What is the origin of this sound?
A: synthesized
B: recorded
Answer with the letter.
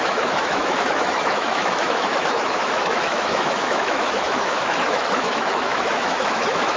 A